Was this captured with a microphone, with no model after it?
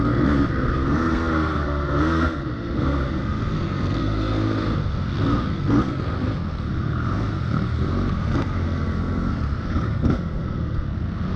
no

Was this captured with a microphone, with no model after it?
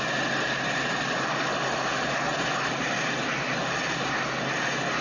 yes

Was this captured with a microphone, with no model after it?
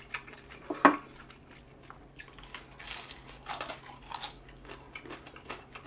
yes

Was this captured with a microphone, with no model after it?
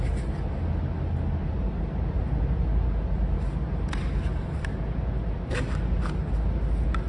yes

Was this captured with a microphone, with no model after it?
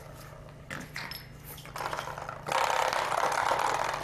yes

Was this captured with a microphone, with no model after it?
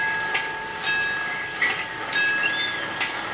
yes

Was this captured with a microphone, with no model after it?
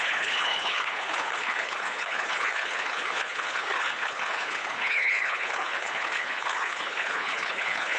no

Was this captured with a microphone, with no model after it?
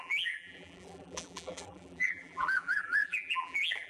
no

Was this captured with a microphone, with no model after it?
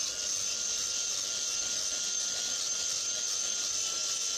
yes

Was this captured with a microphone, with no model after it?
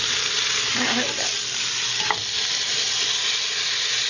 yes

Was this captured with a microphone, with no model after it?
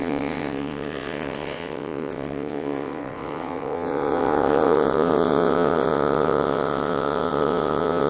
no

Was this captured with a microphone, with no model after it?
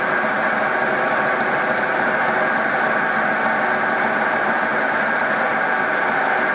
yes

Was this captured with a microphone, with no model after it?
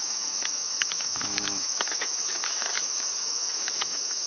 no